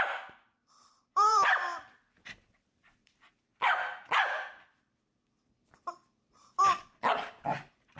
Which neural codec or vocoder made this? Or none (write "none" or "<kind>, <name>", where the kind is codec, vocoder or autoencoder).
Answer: vocoder, BigVGAN v2